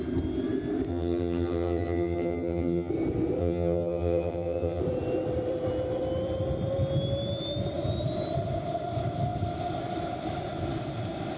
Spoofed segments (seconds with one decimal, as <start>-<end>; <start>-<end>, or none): 0.9-2.9; 3.4-4.8